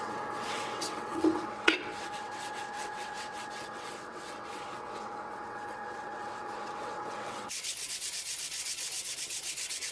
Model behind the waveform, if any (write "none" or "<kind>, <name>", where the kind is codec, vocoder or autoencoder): vocoder, WaveNeXt